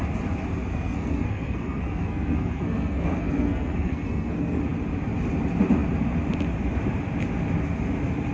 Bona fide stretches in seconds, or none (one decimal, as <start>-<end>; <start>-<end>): 0.0-0.7; 4.6-8.3